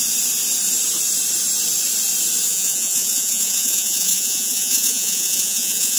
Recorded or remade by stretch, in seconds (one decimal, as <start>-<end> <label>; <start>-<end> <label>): 0.0-2.5 recorded; 2.5-6.0 remade